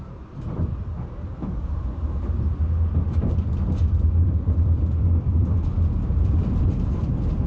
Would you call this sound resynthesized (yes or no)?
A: yes